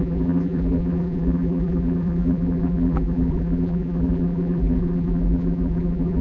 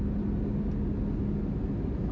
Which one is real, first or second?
second